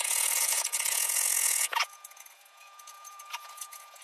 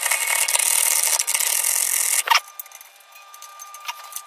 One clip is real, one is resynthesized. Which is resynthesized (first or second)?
first